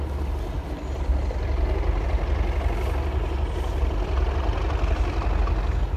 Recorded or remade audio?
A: recorded